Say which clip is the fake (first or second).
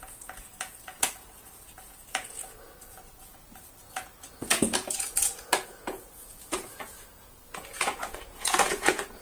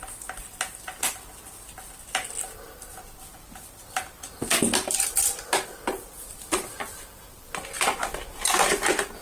first